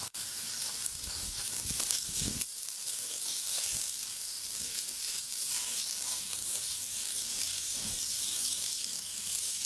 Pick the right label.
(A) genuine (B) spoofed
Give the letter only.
B